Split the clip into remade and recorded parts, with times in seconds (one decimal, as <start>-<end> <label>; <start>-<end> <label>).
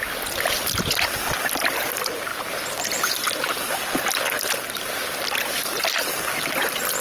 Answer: 0.0-7.0 recorded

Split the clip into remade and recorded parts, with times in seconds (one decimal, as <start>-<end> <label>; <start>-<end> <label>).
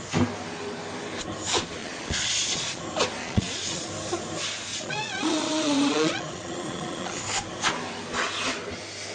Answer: 0.0-1.8 recorded; 1.8-2.8 remade; 2.8-3.2 recorded; 3.2-3.9 remade; 3.9-4.7 recorded; 4.7-7.2 remade; 7.2-9.1 recorded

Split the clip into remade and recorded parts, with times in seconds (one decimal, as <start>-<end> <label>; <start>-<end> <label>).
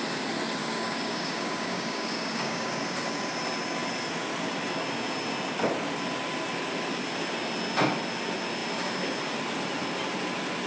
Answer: 0.0-0.6 recorded; 0.6-2.7 remade; 2.7-10.7 recorded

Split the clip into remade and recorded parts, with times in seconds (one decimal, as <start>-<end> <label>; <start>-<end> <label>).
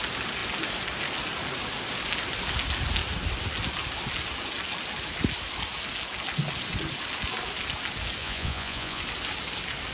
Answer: 0.0-8.2 recorded; 8.2-9.0 remade; 9.0-9.9 recorded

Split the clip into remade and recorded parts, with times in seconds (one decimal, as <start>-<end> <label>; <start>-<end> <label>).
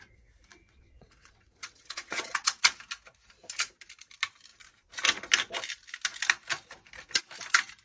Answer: 0.0-0.5 recorded; 0.5-2.6 remade; 2.6-7.8 recorded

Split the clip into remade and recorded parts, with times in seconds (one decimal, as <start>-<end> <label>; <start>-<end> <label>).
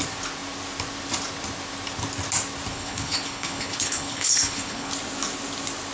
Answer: 0.0-2.7 recorded; 2.7-4.9 remade; 4.9-5.9 recorded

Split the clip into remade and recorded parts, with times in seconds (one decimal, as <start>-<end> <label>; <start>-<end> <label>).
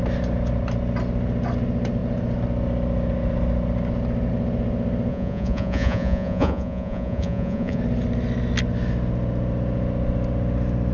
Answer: 0.0-5.1 recorded; 5.1-7.8 remade; 7.8-10.9 recorded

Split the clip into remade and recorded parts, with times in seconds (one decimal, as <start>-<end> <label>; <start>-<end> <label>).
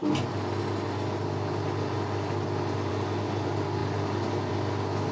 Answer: 0.0-5.1 recorded